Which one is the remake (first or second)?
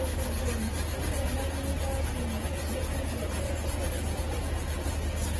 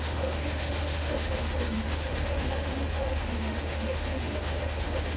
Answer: second